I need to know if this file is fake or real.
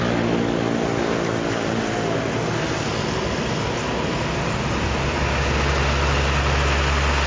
real